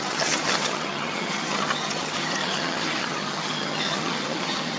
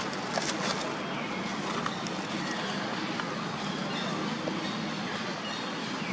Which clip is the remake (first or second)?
first